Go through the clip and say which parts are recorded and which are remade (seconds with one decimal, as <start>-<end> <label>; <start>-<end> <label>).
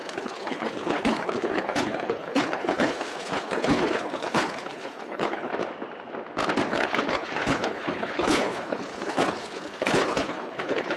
0.0-5.5 remade; 5.5-6.7 recorded; 6.7-11.0 remade